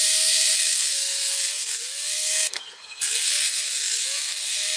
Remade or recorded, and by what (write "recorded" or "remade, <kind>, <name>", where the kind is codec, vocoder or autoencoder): remade, codec, SNAC